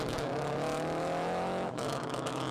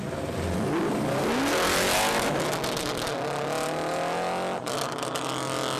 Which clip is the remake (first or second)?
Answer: first